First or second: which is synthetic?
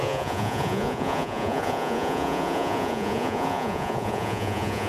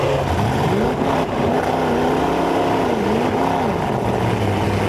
first